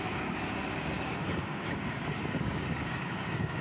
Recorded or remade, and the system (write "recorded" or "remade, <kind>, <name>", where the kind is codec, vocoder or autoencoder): remade, codec, DAC